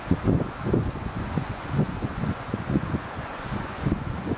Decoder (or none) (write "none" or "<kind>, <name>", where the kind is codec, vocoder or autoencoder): vocoder, Vocos